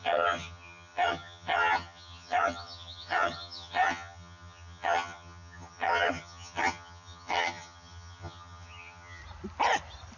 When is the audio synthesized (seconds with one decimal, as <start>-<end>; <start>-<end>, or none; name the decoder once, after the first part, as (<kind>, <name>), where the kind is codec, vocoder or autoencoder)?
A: 0.0-9.2 (vocoder, HiFi-GAN)